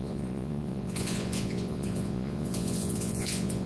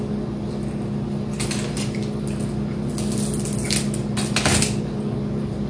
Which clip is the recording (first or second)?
second